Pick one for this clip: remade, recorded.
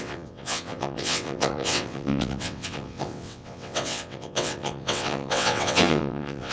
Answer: remade